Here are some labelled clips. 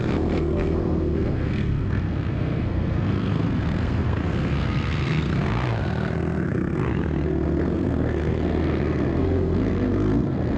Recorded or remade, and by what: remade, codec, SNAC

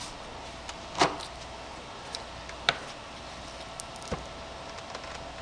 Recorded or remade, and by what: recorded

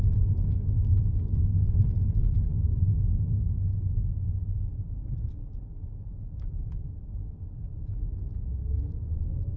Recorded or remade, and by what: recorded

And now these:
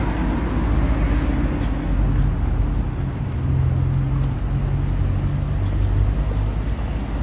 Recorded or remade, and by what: recorded